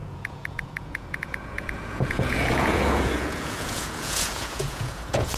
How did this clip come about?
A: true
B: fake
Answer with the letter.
B